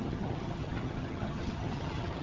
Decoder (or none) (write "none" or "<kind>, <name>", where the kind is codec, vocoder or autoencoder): vocoder, HiFi-GAN